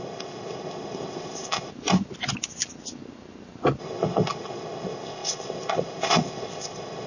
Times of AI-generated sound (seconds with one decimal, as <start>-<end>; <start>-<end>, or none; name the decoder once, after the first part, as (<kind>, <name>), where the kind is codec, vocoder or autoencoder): 0.0-1.7 (codec, ZipCodec); 3.8-7.1